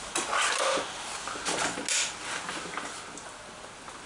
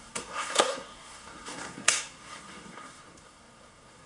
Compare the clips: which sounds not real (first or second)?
second